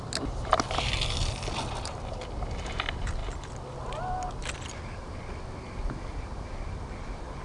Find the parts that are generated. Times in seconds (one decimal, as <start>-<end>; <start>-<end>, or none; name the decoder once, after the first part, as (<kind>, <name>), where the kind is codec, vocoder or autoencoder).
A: none